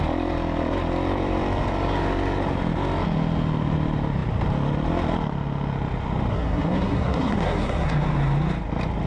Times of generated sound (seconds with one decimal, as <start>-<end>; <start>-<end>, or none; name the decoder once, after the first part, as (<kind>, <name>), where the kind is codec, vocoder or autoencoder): 6.3-7.9 (codec, SNAC)

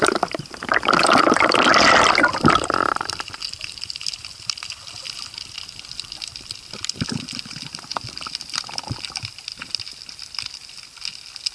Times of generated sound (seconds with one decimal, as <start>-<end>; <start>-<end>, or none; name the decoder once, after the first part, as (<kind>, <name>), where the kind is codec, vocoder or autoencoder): 0.0-11.5 (vocoder, BigVGAN v2)

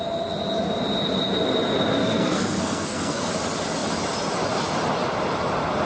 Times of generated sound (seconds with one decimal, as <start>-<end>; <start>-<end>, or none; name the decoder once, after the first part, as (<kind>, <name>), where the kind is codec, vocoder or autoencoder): 2.0-3.3 (codec, SNAC)

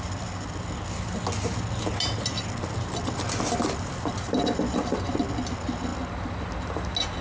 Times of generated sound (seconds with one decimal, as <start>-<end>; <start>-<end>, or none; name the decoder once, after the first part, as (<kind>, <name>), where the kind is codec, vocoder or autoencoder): none